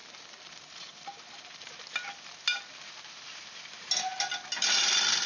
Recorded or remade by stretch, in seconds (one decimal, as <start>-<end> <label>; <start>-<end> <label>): 0.0-5.3 recorded